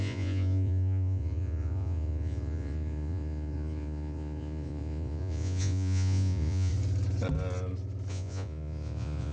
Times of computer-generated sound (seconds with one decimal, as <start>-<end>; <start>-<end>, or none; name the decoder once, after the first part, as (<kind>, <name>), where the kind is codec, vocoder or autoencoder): 0.0-6.7 (vocoder, Vocos); 8.1-9.3